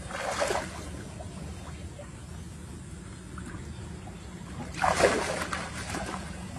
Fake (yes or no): no